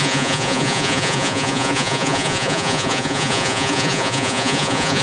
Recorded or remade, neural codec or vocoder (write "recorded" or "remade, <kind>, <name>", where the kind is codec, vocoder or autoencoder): remade, vocoder, Vocos